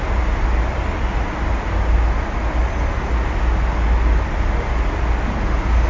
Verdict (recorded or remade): recorded